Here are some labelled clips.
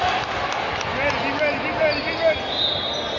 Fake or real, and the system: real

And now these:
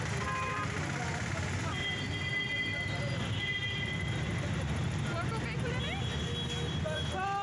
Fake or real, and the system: real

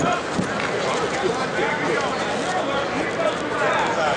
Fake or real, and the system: real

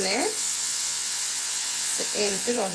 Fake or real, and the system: fake, vocoder, WaveNeXt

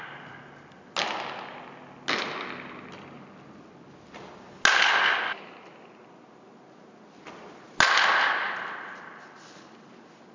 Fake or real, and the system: real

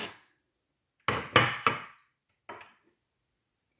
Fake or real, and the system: real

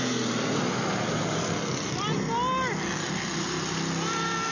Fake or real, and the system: real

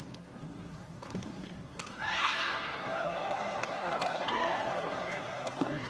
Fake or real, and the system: fake, codec, SNAC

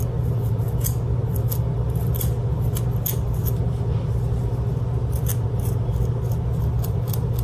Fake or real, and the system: real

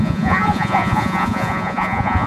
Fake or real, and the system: fake, vocoder, Vocos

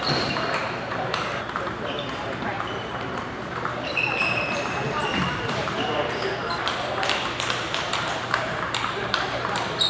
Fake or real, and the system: fake, vocoder, BigVGAN v2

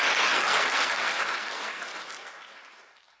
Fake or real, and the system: fake, codec, SNAC